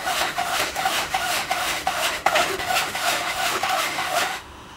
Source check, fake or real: fake